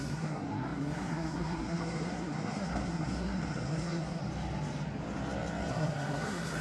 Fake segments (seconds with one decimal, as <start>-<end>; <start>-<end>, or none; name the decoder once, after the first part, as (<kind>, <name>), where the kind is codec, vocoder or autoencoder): 0.0-4.2 (codec, SNAC); 5.7-6.6